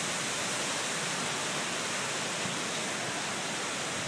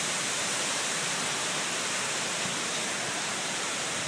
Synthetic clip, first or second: second